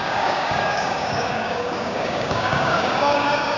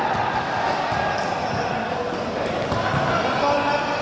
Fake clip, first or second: first